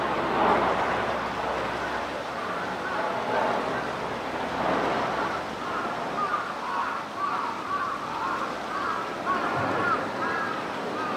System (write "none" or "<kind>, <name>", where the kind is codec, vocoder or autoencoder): none